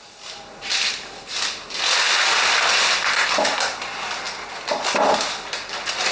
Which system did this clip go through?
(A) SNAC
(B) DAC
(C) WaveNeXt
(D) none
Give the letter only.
D